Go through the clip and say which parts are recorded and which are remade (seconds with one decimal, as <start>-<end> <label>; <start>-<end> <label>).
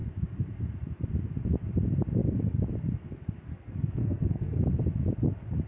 0.0-3.5 recorded; 3.5-4.6 remade; 4.6-5.7 recorded